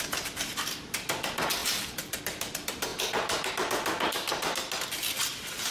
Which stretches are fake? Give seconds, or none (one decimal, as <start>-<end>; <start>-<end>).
0.0-4.3; 5.2-5.7